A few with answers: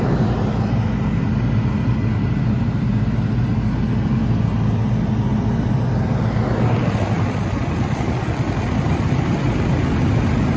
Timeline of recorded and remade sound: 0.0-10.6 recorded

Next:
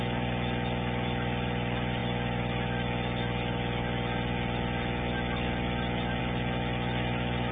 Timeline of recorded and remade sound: 0.0-7.5 recorded

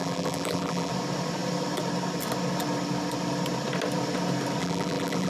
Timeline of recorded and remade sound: 0.0-0.9 remade; 0.9-4.6 recorded; 4.6-5.3 remade

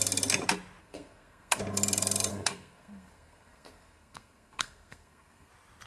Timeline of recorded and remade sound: 0.0-0.8 recorded; 0.8-1.6 remade; 1.6-2.3 recorded; 2.3-5.5 remade; 5.5-5.9 recorded

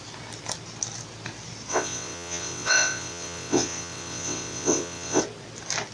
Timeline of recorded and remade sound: 0.0-1.7 recorded; 1.7-5.2 remade; 5.2-5.9 recorded

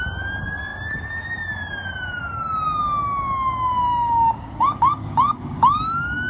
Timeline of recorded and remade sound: 0.0-3.9 recorded; 3.9-6.3 remade

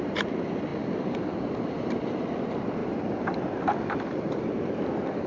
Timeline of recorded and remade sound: 0.0-0.7 remade; 0.7-1.4 recorded; 1.4-2.8 remade; 2.8-4.0 recorded; 4.0-5.3 remade

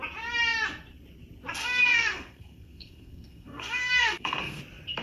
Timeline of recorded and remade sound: 0.0-1.6 recorded; 1.6-4.6 remade; 4.6-5.0 recorded